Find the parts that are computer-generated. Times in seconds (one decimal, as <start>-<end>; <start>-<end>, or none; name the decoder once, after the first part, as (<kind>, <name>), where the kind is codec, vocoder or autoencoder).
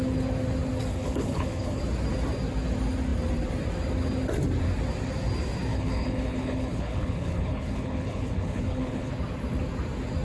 0.9-1.8 (codec, HILCodec); 5.7-9.1